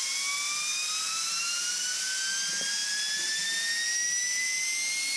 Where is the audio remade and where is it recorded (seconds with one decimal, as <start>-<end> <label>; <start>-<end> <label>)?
0.0-5.2 recorded